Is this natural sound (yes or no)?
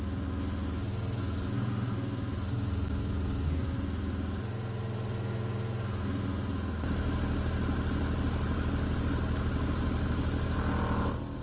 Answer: yes